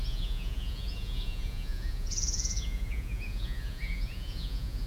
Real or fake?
fake